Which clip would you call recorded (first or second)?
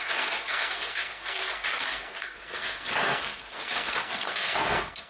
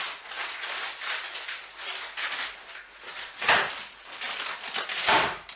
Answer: second